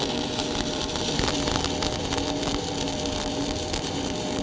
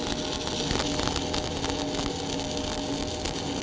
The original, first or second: second